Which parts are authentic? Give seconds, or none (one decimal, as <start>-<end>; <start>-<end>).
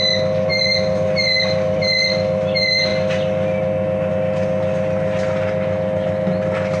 0.0-0.5; 1.8-6.8